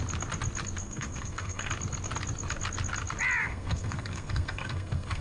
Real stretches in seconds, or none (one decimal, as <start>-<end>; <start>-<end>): 0.0-0.8; 1.7-3.4